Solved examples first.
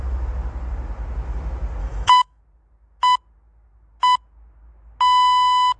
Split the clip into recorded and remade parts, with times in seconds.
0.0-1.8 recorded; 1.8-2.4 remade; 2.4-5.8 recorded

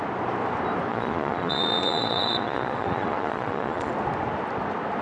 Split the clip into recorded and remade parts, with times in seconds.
0.0-0.9 recorded; 0.9-3.9 remade; 3.9-5.0 recorded

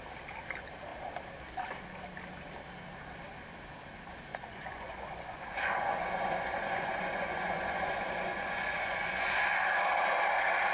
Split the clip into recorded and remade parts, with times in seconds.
0.0-4.3 recorded; 4.3-9.3 remade; 9.3-10.7 recorded

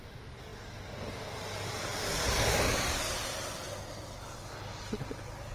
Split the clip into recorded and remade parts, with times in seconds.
0.0-5.5 recorded

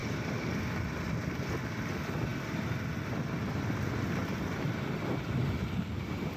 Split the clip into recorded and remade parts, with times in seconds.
0.0-1.0 remade; 1.0-6.4 recorded

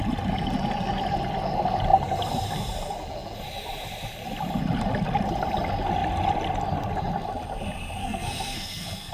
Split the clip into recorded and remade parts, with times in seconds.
0.0-8.0 recorded; 8.0-9.1 remade

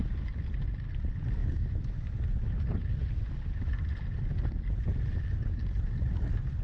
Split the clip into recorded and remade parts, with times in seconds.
0.0-1.4 recorded; 1.4-2.5 remade; 2.5-6.6 recorded

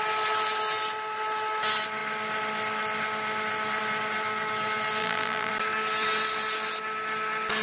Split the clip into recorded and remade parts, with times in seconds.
0.0-5.0 recorded; 5.0-5.5 remade; 5.5-7.6 recorded